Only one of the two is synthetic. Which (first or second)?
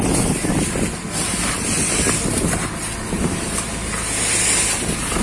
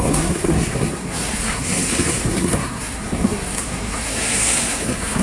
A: second